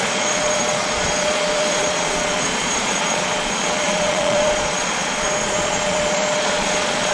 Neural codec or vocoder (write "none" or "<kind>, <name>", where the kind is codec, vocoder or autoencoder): vocoder, Vocos